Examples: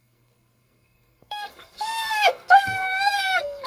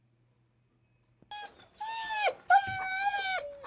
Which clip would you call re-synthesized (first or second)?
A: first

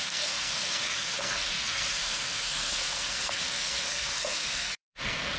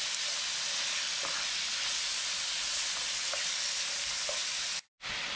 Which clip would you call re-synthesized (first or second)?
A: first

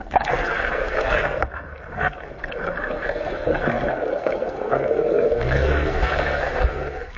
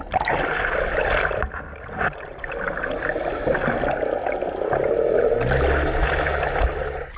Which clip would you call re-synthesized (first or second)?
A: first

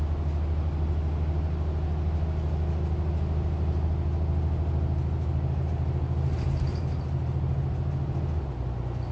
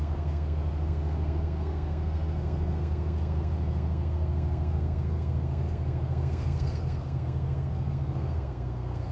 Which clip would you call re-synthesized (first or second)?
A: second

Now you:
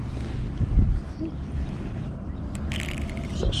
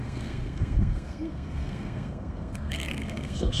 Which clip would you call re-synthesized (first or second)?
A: second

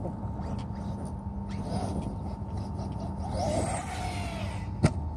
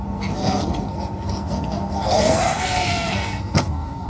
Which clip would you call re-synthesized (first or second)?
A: second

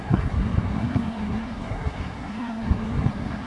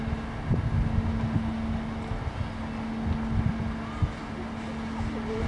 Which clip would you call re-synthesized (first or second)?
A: first